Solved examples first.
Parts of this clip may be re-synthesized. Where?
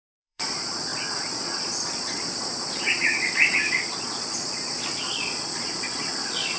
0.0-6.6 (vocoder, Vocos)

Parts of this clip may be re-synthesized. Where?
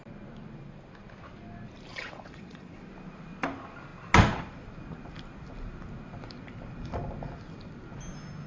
1.9-2.9 (vocoder, WaveNeXt)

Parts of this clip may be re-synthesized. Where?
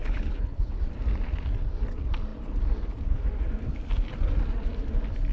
0.0-0.8 (codec, HILCodec)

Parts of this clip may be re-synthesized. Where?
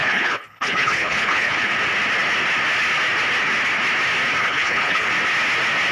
0.0-1.7 (codec, HILCodec); 4.4-5.1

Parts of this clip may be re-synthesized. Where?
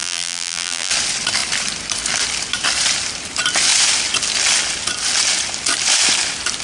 0.0-0.9 (vocoder, BigVGAN v2)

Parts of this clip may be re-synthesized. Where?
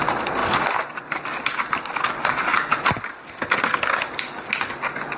none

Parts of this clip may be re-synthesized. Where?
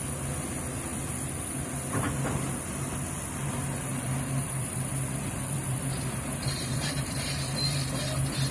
3.9-8.0 (vocoder, BigVGAN v2)